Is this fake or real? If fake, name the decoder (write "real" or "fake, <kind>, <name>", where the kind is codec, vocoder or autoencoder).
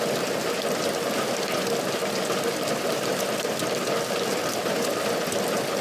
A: real